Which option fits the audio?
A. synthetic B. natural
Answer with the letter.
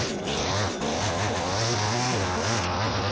B